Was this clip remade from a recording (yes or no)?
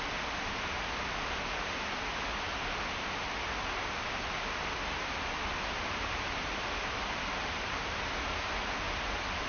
no